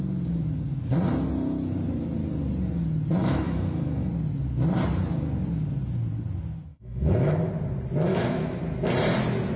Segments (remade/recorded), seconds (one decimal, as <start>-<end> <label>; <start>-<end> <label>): 0.0-3.2 recorded; 3.2-4.1 remade; 4.1-6.7 recorded; 6.7-7.5 remade; 7.5-8.1 recorded; 8.1-8.6 remade; 8.6-9.6 recorded